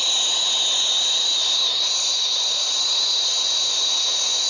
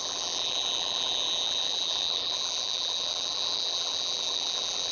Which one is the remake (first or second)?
second